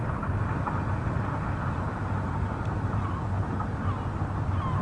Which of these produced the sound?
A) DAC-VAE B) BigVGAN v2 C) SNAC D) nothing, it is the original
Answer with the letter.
D